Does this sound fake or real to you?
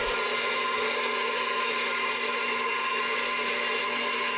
real